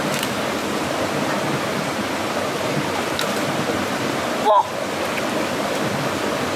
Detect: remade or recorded recorded